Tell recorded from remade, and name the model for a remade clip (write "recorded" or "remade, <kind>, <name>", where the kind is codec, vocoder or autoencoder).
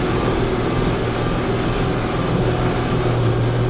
recorded